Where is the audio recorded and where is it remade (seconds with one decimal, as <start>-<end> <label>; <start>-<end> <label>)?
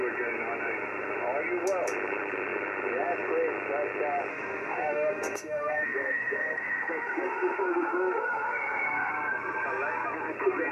0.0-4.3 recorded; 4.3-9.1 remade; 9.1-10.7 recorded